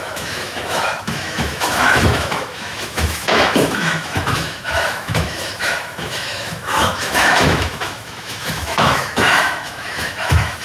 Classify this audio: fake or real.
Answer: fake